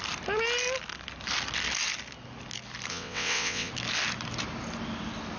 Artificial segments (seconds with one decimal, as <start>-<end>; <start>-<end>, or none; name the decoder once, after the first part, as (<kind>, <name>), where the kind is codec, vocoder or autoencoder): 2.9-3.7 (vocoder, WaveNeXt)